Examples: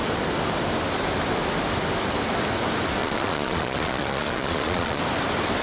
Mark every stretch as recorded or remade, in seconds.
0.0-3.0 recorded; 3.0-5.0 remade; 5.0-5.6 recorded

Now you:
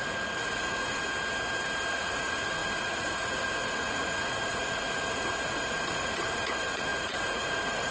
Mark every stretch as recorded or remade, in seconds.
0.0-1.1 remade; 1.1-1.9 recorded; 1.9-7.9 remade

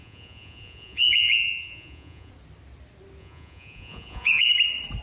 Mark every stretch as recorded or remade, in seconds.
0.0-2.3 remade; 2.3-3.2 recorded; 3.2-4.5 remade; 4.5-5.0 recorded

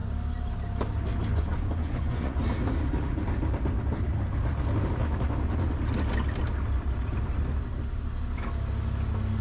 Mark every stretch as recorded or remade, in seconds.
0.0-1.3 recorded; 1.3-2.4 remade; 2.4-9.4 recorded

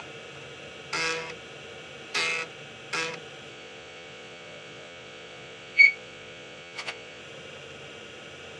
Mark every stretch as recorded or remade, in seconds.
0.0-3.5 recorded; 3.5-7.2 remade; 7.2-8.6 recorded

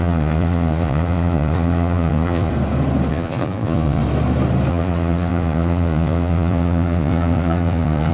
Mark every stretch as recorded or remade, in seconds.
0.0-2.5 remade; 2.5-3.1 recorded; 3.1-4.0 remade; 4.0-4.7 recorded; 4.7-8.1 remade

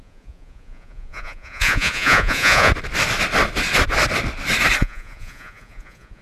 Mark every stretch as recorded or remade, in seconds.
0.0-2.7 remade; 2.7-4.8 recorded; 4.8-6.2 remade

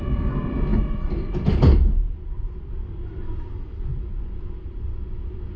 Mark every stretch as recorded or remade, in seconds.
0.0-3.9 recorded; 3.9-4.4 remade; 4.4-5.6 recorded